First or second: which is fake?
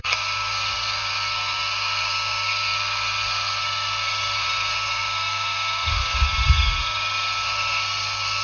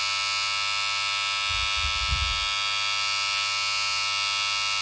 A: first